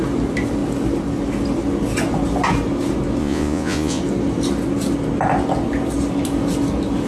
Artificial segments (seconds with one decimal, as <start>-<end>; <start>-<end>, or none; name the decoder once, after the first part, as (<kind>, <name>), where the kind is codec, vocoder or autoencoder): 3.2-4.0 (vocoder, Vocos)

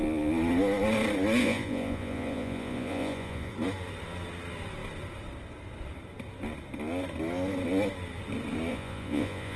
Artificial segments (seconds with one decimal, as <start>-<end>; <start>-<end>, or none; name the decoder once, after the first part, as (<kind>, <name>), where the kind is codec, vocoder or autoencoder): 1.4-3.5 (vocoder, Vocos); 8.7-9.6

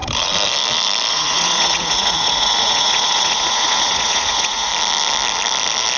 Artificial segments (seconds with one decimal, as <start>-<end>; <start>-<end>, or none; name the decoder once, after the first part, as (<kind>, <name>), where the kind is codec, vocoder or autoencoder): 1.1-4.7 (vocoder, Vocos)